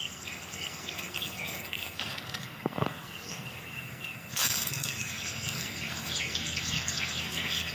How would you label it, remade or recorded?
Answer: remade